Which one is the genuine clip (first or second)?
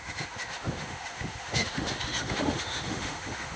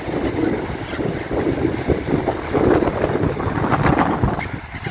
second